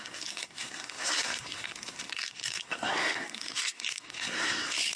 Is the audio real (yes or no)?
no